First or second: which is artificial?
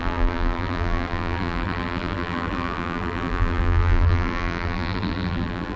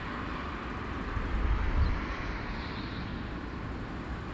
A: first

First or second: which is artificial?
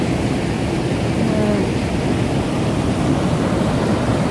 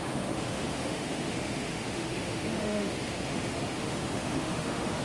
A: second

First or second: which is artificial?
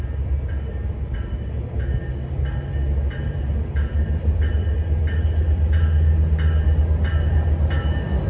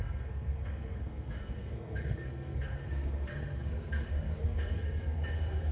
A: second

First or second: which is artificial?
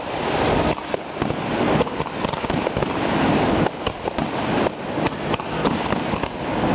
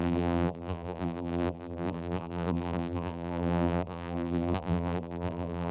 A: second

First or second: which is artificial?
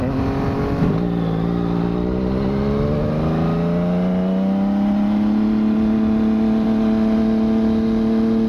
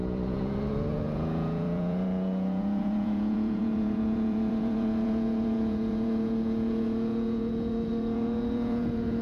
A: second